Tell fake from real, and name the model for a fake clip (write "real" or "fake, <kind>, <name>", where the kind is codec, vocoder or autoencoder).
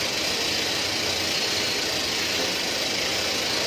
real